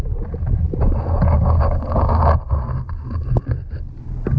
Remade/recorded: recorded